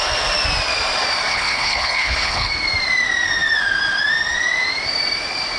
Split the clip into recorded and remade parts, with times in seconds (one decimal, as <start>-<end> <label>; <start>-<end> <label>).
0.0-1.3 recorded; 1.3-2.5 remade; 2.5-5.6 recorded

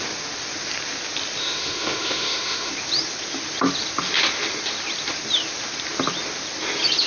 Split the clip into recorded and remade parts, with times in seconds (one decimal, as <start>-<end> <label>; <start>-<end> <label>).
0.0-1.4 recorded; 1.4-2.7 remade; 2.7-7.1 recorded

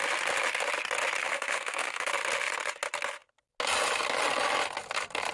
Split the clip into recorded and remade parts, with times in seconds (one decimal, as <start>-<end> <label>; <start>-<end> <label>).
0.0-1.2 recorded; 1.2-2.1 remade; 2.1-5.3 recorded

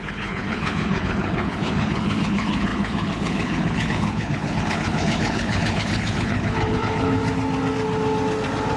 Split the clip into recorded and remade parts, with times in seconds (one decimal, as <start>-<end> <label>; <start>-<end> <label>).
0.0-7.2 remade; 7.2-8.8 recorded

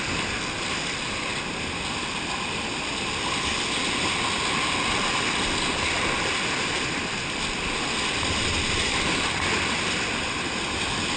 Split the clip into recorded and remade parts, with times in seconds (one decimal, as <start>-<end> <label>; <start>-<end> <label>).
0.0-11.2 recorded